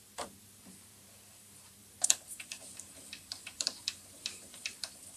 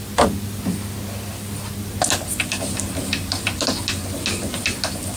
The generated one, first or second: first